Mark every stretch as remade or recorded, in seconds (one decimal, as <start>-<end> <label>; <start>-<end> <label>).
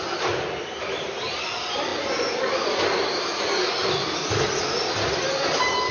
0.0-5.9 recorded